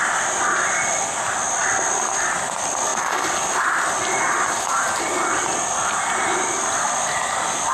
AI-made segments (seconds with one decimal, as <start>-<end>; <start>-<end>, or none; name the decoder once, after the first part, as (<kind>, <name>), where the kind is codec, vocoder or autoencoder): none